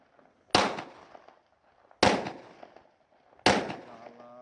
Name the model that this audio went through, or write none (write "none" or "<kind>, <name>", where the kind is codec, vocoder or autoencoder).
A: none